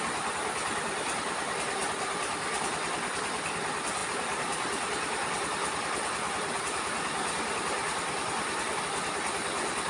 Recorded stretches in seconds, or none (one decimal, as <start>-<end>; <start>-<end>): 0.0-4.0; 8.8-9.9